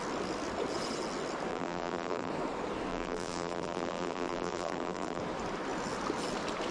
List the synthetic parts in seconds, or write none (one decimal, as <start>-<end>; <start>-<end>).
1.5-2.3; 2.9-5.2